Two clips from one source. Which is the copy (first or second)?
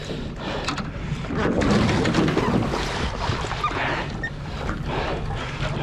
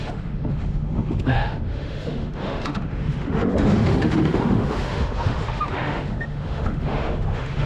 second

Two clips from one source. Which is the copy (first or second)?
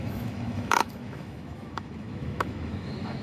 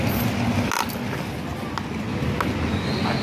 first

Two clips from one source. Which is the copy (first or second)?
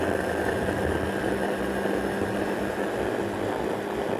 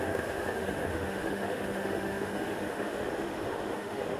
second